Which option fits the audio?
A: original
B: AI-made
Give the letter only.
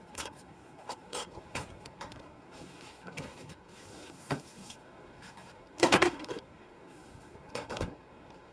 B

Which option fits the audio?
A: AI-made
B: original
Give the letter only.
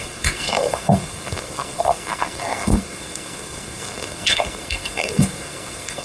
A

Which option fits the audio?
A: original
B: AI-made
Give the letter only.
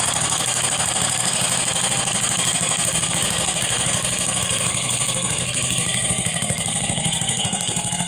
B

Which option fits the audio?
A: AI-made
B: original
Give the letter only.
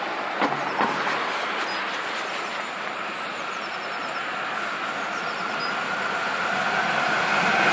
B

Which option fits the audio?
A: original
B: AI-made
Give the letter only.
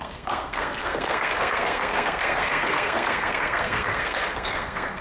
B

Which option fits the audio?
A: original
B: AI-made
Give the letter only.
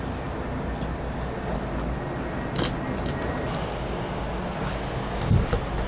A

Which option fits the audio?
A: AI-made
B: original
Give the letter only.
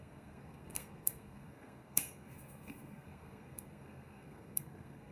A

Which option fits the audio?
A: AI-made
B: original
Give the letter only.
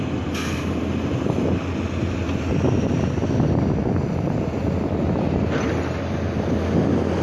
B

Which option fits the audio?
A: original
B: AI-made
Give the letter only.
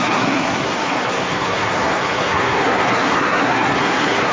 B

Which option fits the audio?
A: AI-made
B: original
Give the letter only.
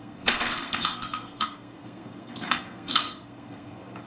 A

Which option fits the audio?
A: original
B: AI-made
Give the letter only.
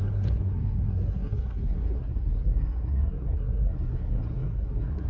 B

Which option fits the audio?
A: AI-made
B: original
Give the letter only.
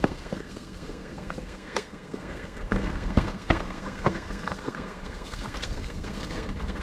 A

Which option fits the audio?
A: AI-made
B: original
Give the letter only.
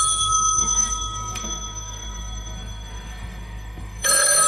A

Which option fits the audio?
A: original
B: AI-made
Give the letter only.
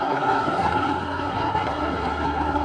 B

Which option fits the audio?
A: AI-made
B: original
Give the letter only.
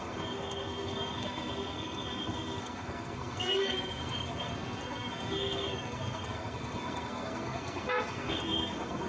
A